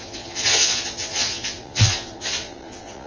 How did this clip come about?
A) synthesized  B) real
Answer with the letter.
A